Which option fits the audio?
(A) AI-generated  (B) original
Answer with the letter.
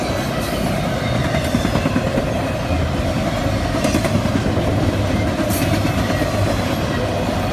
B